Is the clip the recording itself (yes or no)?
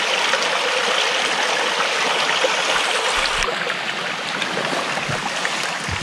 yes